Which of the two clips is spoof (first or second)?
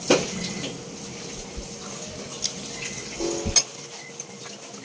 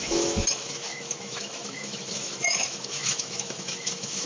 second